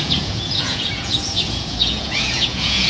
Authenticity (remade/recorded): remade